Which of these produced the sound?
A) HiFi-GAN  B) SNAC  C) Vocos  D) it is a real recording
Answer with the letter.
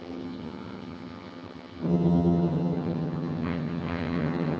A